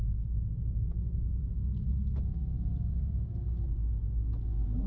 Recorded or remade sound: recorded